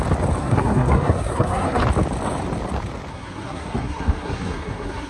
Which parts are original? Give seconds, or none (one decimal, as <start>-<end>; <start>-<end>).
0.0-0.4; 1.8-3.1